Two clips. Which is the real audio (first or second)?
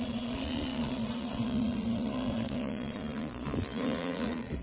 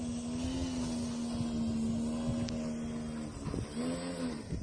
second